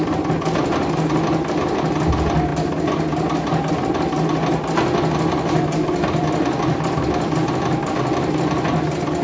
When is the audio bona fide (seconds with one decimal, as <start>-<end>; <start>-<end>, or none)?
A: 0.0-9.2